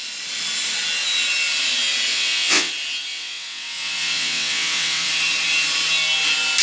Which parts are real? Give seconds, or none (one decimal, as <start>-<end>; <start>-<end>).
0.0-2.1; 2.7-3.1; 5.1-6.6